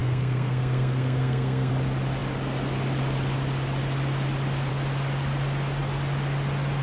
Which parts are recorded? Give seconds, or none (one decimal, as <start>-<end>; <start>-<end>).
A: 1.7-6.8